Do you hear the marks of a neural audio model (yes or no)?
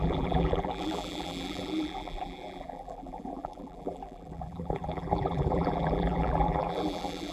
yes